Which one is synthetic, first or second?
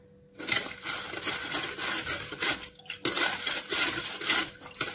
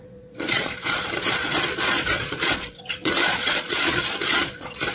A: second